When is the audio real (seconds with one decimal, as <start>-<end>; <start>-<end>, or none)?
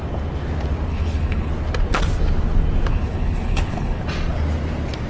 0.0-0.9; 1.5-2.9; 4.0-5.1